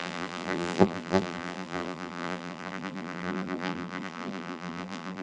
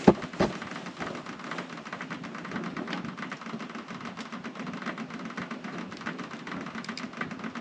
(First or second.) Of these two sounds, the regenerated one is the first